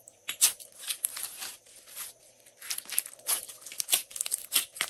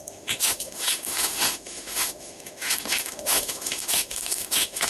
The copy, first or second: second